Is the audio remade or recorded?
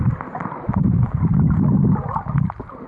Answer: recorded